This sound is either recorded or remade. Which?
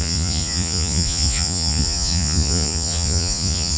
remade